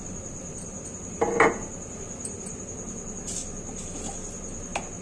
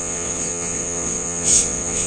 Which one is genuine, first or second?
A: first